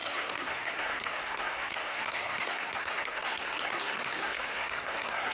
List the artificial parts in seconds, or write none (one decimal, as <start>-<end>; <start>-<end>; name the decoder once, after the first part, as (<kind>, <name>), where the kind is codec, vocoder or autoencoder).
0.0-5.3 (codec, SNAC)